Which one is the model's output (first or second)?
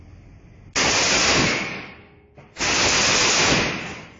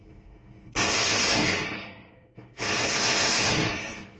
second